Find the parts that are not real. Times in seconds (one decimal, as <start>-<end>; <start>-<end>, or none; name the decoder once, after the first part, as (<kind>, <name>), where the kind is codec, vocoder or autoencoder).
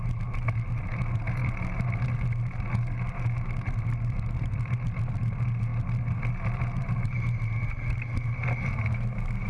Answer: none